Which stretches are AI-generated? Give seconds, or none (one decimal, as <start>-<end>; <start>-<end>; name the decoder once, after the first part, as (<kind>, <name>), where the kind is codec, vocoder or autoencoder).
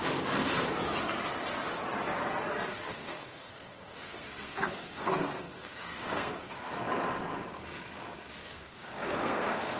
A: 2.7-6.7 (codec, SNAC); 8.4-9.8